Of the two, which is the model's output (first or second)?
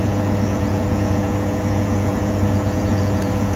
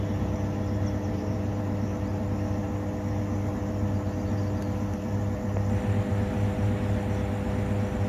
first